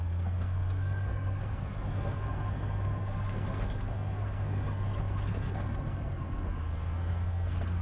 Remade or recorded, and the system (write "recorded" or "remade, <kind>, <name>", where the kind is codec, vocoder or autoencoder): remade, codec, SNAC